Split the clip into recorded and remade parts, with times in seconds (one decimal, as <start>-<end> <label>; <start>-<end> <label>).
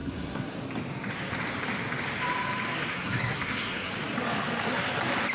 0.0-0.6 remade; 0.6-2.9 recorded; 2.9-3.9 remade; 3.9-5.3 recorded